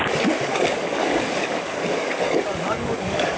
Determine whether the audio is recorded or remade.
remade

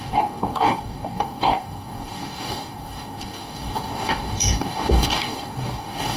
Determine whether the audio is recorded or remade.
remade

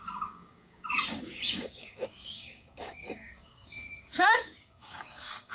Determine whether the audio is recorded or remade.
remade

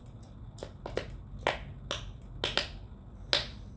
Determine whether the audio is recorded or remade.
recorded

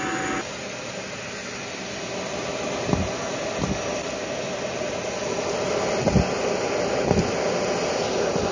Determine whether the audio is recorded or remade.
recorded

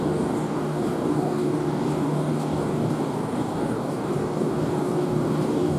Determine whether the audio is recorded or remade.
remade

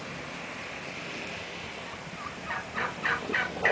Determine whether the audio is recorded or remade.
recorded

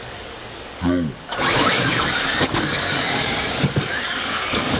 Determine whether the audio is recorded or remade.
remade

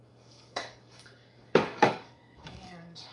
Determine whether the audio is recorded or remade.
remade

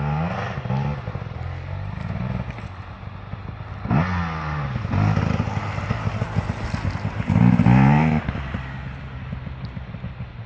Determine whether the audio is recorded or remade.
recorded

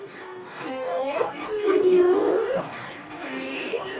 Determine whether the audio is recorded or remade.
remade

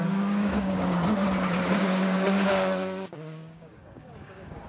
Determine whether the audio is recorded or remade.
remade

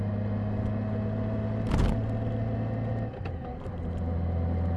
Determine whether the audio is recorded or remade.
recorded